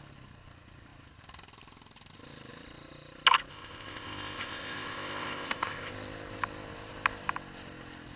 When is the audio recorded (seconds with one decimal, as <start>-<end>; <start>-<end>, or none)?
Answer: 0.0-3.5; 5.9-8.2

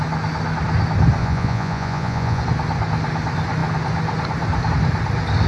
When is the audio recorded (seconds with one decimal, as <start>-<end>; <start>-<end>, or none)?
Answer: 0.0-1.2; 2.4-5.5